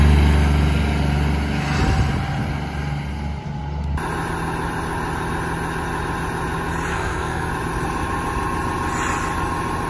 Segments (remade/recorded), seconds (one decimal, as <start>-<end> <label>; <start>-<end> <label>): 0.0-6.9 recorded; 6.9-7.5 remade; 7.5-9.9 recorded